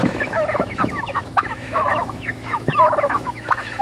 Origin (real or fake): fake